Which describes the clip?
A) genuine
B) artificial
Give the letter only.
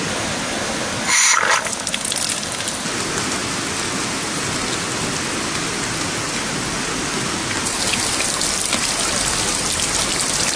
A